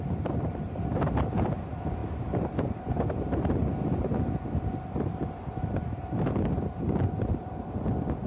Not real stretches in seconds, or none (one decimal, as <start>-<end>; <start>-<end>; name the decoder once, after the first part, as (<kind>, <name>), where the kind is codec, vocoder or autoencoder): 0.0-3.6 (vocoder, BigVGAN v2); 5.6-8.3